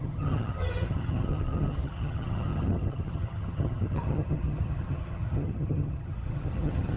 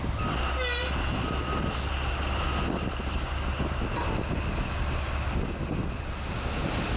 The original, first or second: second